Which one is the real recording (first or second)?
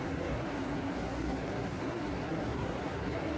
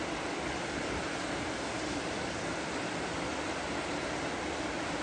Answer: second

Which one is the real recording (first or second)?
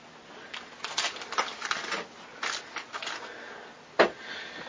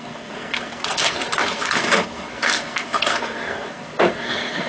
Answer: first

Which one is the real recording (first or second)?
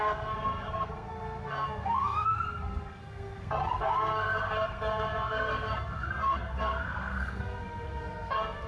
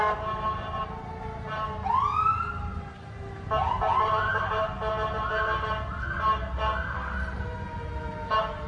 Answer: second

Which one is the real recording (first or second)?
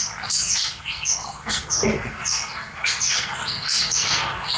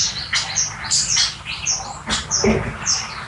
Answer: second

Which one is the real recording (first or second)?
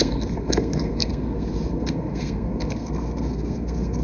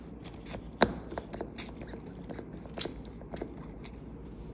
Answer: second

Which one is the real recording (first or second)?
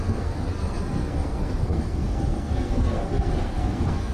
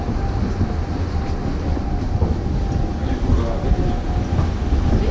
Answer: second